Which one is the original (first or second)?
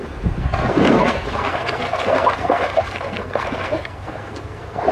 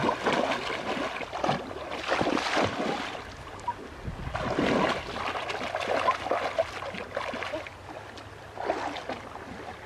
second